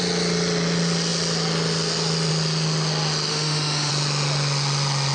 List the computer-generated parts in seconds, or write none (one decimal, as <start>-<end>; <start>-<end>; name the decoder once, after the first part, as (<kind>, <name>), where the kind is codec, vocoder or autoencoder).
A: 3.3-3.9 (autoencoder, DAC-VAE)